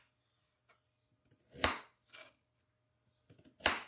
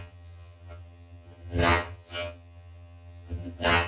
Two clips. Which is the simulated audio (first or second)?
second